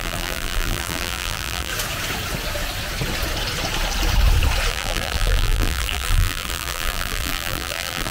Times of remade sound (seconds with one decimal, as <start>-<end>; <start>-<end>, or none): 0.0-1.7; 4.7-8.1